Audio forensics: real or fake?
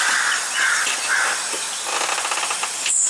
real